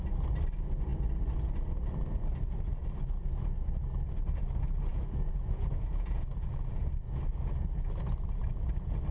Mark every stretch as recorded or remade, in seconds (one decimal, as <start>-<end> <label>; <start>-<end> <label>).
0.0-4.9 recorded; 4.9-7.2 remade; 7.2-9.1 recorded